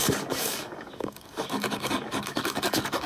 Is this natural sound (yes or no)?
no